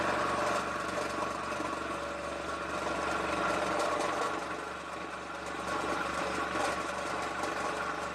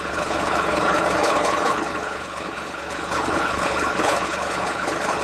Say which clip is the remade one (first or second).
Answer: second